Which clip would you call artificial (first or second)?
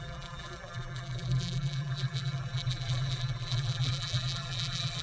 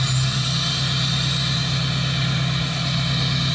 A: first